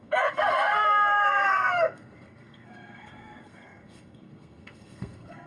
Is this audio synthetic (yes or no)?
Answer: yes